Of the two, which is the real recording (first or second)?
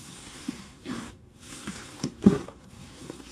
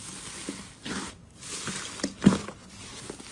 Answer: second